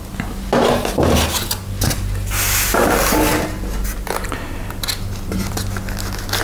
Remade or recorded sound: recorded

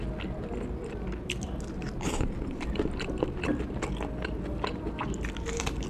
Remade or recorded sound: recorded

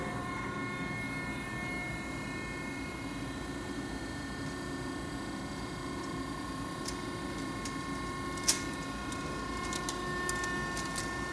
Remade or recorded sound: recorded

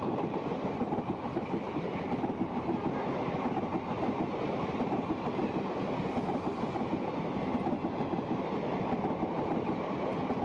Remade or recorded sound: recorded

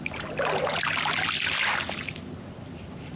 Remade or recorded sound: recorded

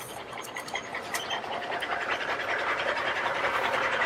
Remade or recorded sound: remade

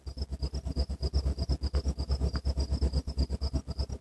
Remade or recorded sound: remade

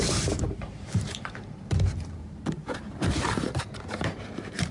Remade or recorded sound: remade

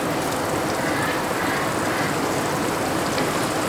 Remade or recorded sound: recorded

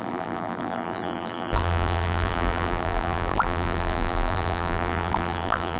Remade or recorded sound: remade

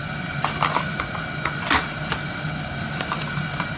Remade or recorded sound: recorded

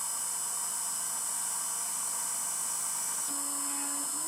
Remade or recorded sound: recorded